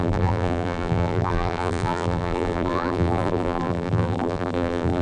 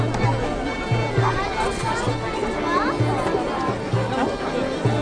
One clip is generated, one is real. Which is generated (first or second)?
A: first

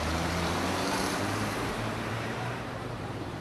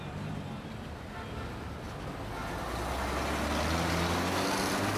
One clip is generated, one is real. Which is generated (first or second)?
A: first